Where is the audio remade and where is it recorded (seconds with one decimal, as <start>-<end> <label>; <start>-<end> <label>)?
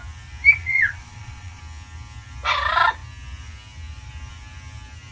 0.0-0.6 recorded; 0.6-1.6 remade; 1.6-5.1 recorded